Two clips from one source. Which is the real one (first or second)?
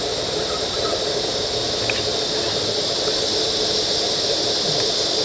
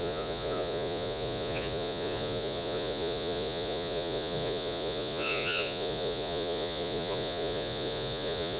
first